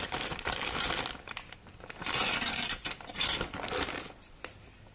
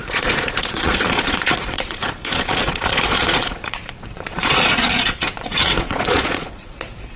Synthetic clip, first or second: second